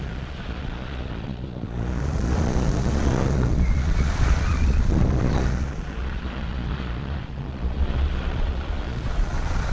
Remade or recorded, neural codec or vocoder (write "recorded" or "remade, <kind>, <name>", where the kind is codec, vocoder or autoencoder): remade, vocoder, Vocos